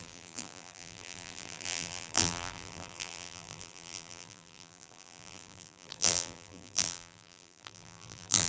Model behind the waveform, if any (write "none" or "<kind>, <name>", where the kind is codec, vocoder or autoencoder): vocoder, BigVGAN v2